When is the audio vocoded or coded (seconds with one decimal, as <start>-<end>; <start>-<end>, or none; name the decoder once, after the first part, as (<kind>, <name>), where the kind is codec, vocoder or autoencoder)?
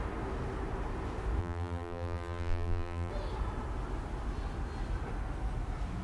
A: 1.4-3.1 (vocoder, BigVGAN v2)